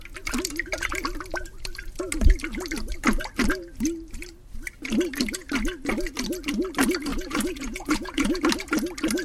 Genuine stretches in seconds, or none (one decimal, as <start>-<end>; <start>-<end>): 0.0-7.1; 8.4-9.2